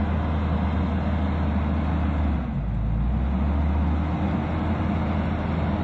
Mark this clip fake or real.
real